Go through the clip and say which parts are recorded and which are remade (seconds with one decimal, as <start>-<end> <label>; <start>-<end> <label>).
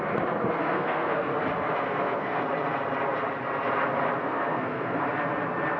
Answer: 0.0-0.6 recorded; 0.6-1.3 remade; 1.3-1.8 recorded; 1.8-2.4 remade; 2.4-4.2 recorded; 4.2-5.0 remade; 5.0-5.8 recorded